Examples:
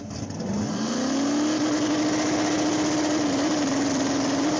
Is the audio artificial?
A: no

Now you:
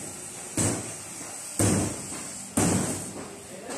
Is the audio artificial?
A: no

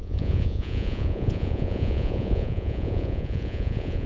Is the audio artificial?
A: yes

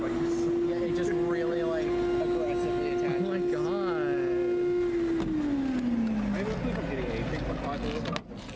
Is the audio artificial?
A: no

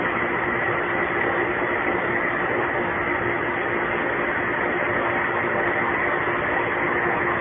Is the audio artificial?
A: no